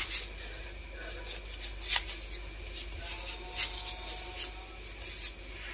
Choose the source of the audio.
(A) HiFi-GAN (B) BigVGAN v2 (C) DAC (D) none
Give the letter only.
D